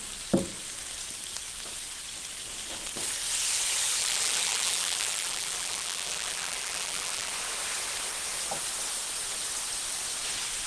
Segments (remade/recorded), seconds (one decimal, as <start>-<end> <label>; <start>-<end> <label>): 0.0-4.0 recorded; 4.0-7.3 remade; 7.3-10.7 recorded